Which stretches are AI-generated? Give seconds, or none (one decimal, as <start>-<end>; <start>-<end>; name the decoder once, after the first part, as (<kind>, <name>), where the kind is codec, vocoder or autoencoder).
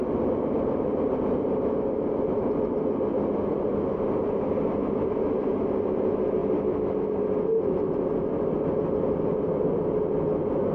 none